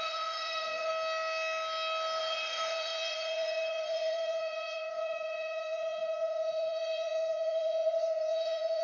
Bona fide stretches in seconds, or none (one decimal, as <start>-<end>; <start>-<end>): 0.9-2.2